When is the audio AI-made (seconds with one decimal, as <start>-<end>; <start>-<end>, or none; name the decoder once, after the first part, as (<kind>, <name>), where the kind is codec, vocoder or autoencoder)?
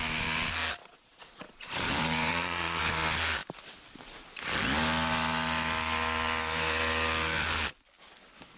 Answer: 0.8-1.9 (vocoder, Vocos); 2.3-2.8